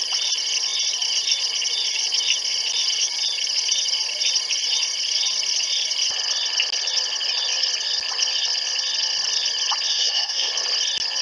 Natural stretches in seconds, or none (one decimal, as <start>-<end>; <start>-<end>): 0.0-9.9; 10.5-11.2